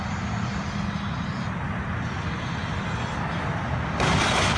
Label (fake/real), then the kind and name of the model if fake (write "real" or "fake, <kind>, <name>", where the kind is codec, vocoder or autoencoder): real